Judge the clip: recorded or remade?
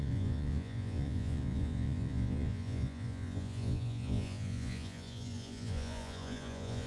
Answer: remade